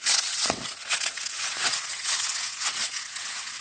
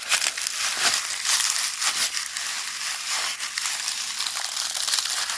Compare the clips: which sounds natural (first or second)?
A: second